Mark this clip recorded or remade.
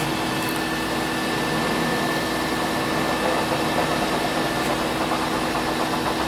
recorded